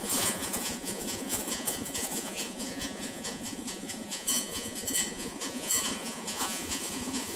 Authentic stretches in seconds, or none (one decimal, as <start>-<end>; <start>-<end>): none